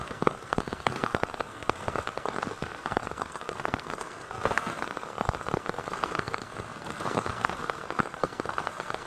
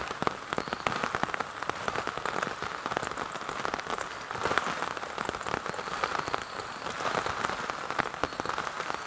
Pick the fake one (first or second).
first